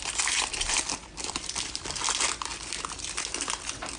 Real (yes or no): no